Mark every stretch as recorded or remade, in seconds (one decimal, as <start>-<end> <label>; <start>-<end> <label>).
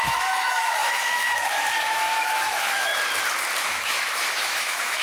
0.0-2.9 remade; 2.9-3.6 recorded; 3.6-5.0 remade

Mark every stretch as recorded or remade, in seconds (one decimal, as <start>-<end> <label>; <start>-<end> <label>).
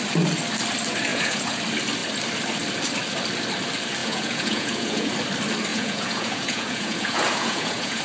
0.0-1.1 recorded; 1.1-1.6 remade; 1.6-4.0 recorded; 4.0-5.1 remade; 5.1-5.7 recorded; 5.7-8.0 remade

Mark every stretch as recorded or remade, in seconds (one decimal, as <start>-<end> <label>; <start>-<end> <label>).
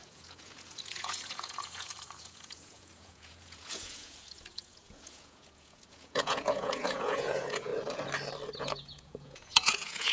0.0-7.7 remade; 7.7-8.6 recorded; 8.6-10.1 remade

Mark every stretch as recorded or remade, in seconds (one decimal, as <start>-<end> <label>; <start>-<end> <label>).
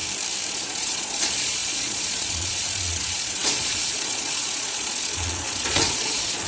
0.0-0.5 recorded; 0.5-6.5 remade